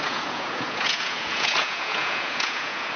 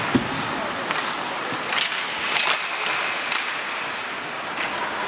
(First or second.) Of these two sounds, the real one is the second